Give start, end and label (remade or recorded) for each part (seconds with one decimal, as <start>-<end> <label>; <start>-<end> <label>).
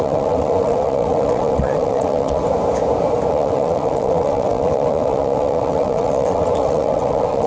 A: 0.0-2.4 remade; 2.4-3.3 recorded; 3.3-7.5 remade